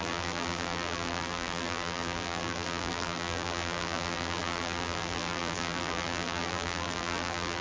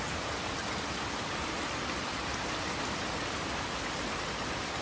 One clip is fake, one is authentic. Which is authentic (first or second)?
second